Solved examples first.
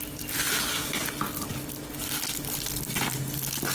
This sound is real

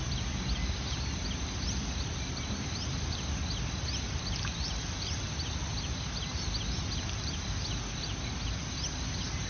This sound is real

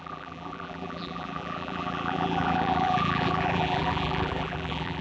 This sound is fake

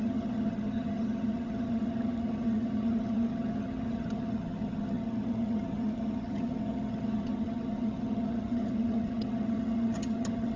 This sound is fake